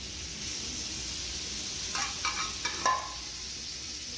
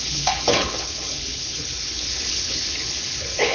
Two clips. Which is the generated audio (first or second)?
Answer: second